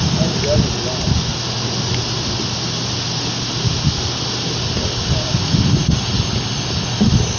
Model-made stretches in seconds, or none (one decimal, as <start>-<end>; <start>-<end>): none